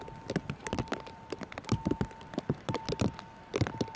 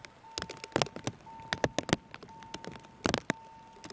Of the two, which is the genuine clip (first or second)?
second